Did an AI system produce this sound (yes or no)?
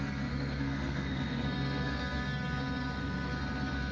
yes